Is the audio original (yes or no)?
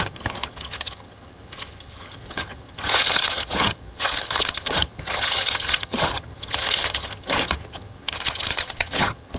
no